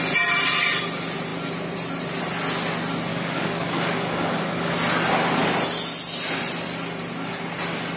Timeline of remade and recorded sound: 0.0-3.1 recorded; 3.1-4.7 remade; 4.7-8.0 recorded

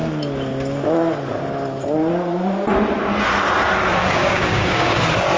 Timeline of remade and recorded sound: 0.0-4.0 recorded; 4.0-5.0 remade; 5.0-5.4 recorded

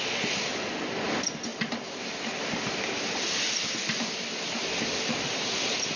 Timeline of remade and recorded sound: 0.0-6.0 recorded

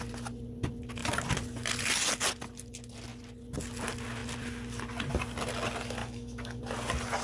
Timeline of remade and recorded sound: 0.0-6.0 recorded; 6.0-6.6 remade; 6.6-7.2 recorded

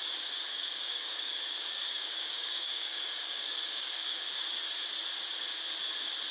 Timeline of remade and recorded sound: 0.0-0.5 recorded; 0.5-4.3 remade; 4.3-6.3 recorded